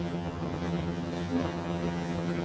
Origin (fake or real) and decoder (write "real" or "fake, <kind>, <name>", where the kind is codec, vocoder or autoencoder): fake, vocoder, HiFi-GAN